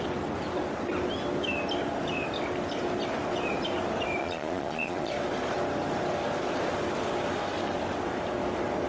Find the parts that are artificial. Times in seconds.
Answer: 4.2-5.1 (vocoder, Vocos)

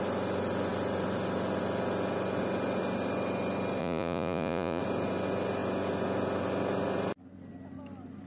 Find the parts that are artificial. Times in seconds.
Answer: 3.8-4.8 (vocoder, Vocos)

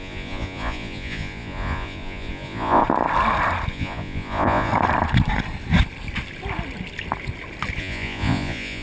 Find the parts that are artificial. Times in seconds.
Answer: 0.0-2.8 (vocoder, Vocos); 3.7-4.7; 7.8-8.8

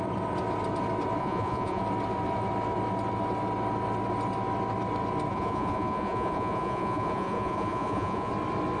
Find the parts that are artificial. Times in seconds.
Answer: 1.2-1.8 (vocoder, Vocos); 5.3-8.3

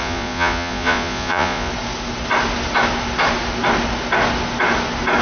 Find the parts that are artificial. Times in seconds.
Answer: 0.0-1.7 (vocoder, Vocos)